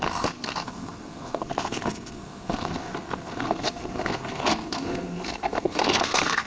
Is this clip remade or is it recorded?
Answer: remade